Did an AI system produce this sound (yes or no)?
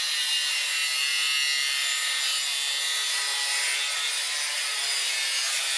no